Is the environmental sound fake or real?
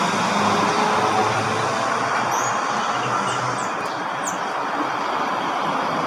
real